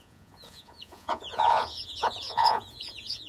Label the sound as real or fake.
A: fake